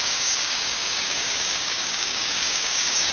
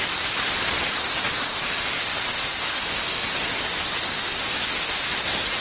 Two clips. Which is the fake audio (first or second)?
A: first